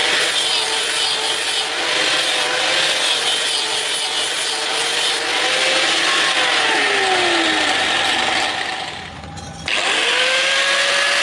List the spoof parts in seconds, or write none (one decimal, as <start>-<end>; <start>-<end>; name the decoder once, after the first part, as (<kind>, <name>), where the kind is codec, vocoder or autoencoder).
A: none